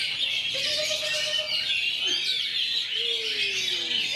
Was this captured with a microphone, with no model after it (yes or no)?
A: yes